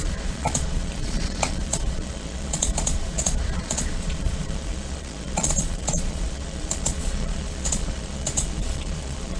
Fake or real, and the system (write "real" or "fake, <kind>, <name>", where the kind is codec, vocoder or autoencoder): fake, vocoder, Vocos